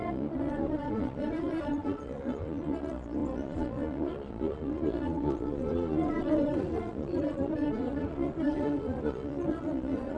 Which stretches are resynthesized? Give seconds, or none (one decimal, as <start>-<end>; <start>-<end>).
0.0-10.2